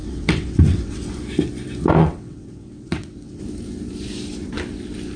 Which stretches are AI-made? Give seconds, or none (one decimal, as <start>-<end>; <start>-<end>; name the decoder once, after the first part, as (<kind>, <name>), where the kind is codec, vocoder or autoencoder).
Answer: 0.0-1.1 (vocoder, WaveNeXt); 2.0-3.4